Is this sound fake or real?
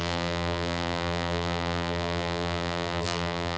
fake